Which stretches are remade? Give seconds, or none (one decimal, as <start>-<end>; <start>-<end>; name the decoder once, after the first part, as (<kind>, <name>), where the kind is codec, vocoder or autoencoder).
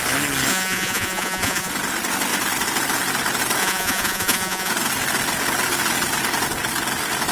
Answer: 0.5-1.7 (vocoder, Vocos); 3.6-4.7